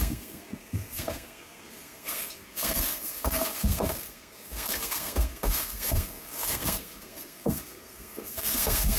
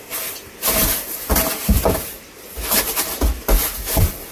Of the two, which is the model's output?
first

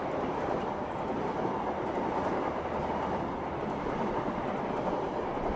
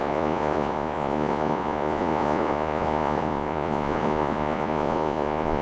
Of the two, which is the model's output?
second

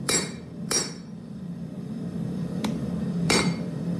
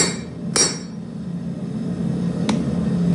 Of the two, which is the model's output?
first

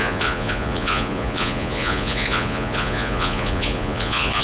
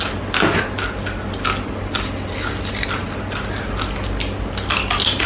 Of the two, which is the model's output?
first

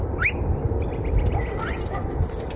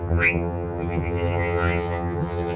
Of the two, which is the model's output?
second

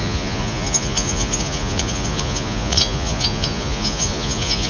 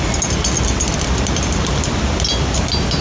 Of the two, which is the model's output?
first